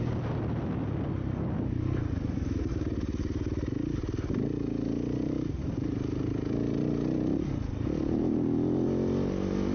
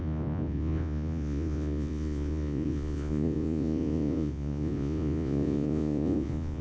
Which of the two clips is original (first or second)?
first